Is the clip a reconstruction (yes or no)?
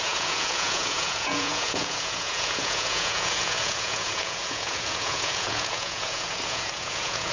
yes